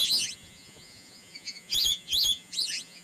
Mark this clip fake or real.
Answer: fake